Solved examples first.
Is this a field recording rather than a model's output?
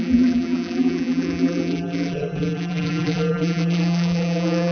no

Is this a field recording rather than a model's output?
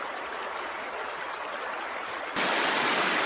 yes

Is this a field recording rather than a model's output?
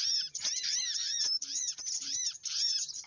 no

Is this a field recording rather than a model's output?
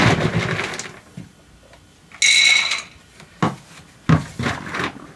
yes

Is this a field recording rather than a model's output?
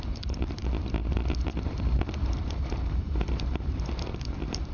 no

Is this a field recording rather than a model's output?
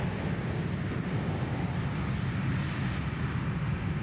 yes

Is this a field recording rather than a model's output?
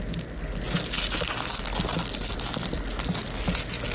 yes